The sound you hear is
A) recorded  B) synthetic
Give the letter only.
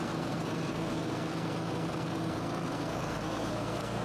B